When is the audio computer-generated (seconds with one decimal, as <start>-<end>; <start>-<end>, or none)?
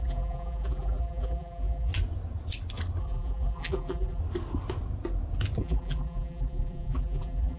0.0-1.9; 3.0-4.2; 5.6-7.6